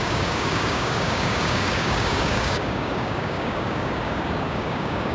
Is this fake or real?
fake